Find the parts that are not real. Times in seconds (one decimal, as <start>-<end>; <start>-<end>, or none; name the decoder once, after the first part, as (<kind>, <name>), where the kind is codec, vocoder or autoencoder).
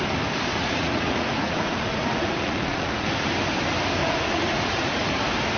0.5-3.1 (vocoder, Vocos); 4.0-5.1